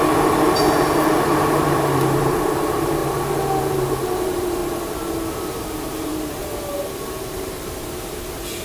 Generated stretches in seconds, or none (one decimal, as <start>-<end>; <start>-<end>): 0.0-3.0; 3.6-4.6; 5.3-8.6